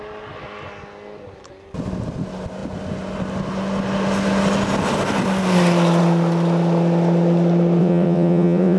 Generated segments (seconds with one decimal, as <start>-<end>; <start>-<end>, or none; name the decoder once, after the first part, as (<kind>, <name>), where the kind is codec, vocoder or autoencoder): 7.8-8.8 (vocoder, WaveNeXt)